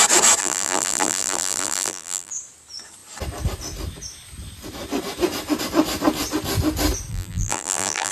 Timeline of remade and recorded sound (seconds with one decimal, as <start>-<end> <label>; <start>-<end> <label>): 0.0-0.4 recorded; 0.4-2.3 remade; 2.3-7.1 recorded; 7.1-8.1 remade